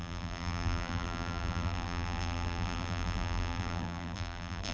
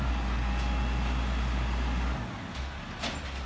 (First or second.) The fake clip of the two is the first